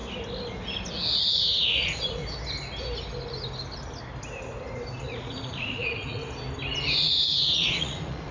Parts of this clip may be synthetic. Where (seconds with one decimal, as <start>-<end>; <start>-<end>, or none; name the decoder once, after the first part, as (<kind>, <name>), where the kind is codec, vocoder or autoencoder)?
1.6-2.2 (vocoder, Vocos); 5.0-6.2; 6.9-8.3